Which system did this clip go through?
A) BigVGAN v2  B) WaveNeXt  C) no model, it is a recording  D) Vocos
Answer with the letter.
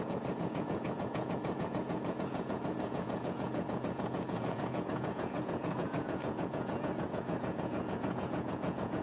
D